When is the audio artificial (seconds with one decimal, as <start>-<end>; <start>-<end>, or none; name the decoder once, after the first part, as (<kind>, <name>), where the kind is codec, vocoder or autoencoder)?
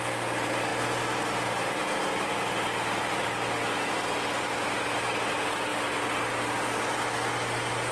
none